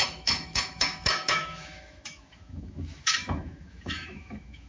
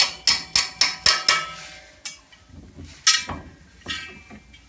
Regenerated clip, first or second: first